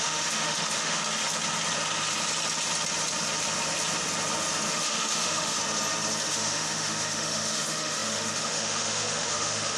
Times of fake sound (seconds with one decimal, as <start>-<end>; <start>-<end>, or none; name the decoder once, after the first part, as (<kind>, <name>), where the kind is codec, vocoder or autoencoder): 0.0-1.0 (autoencoder, DAC-VAE); 4.7-5.6; 6.3-9.8